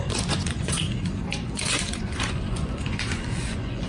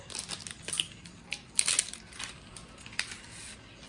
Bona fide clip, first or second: second